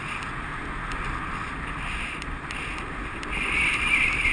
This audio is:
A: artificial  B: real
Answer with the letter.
B